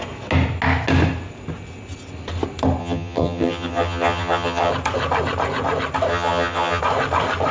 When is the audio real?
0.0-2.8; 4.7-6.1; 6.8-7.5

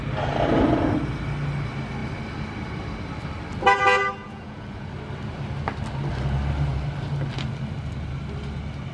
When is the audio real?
0.0-4.2; 4.9-8.9

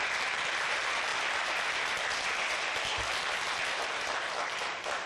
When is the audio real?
0.0-5.1

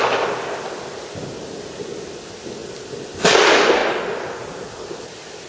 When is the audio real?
0.0-5.5

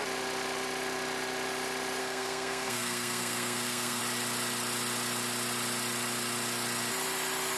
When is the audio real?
0.0-2.0; 4.0-7.6

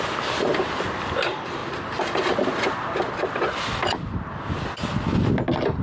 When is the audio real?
0.0-5.8

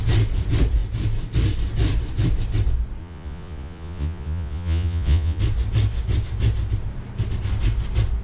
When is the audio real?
0.0-3.0; 5.4-8.2

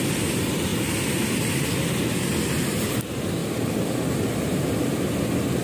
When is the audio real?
0.0-3.4; 4.9-5.6